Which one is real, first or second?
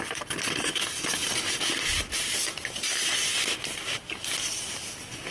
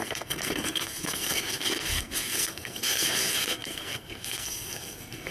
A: first